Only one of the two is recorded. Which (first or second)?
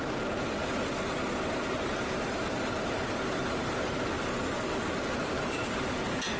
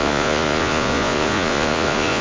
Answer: first